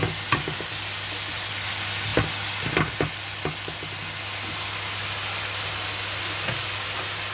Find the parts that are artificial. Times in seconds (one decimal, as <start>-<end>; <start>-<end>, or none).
none